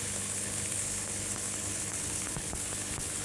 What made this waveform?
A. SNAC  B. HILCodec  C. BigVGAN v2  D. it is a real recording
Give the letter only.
B